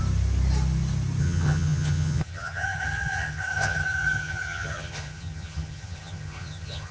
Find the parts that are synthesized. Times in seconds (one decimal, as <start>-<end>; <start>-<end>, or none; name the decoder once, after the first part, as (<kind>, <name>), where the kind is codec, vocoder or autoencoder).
1.2-6.9 (vocoder, HiFi-GAN)